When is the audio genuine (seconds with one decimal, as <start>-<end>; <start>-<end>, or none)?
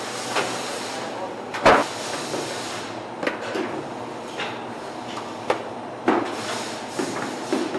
0.0-7.8